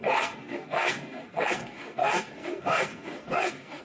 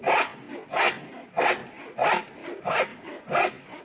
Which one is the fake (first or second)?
first